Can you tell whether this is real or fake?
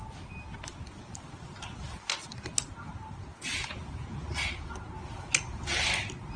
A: real